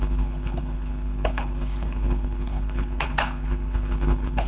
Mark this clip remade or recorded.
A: remade